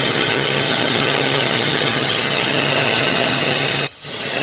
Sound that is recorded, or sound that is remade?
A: remade